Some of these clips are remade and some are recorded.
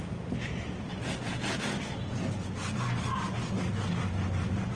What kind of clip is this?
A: recorded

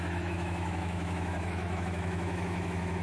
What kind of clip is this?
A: remade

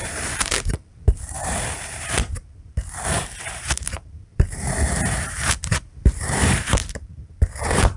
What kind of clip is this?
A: remade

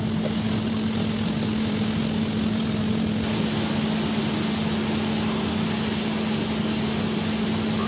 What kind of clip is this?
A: recorded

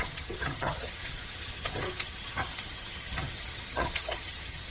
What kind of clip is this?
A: remade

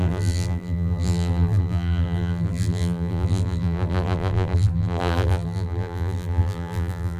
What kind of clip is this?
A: remade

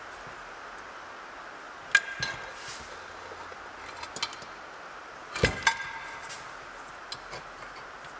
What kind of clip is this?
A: recorded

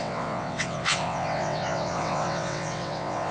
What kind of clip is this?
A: remade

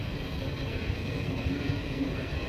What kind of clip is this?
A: remade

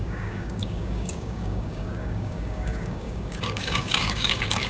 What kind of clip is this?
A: remade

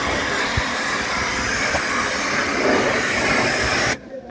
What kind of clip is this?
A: recorded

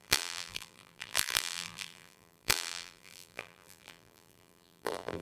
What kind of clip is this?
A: remade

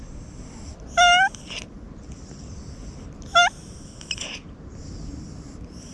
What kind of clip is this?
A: recorded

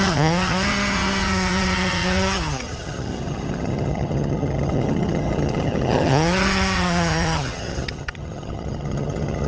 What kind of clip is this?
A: remade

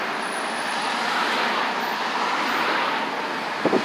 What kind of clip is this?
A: recorded